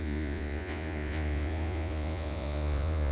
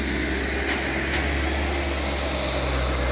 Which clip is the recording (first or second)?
second